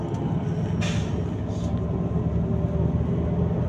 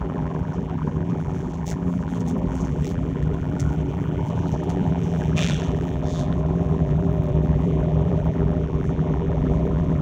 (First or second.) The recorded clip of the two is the first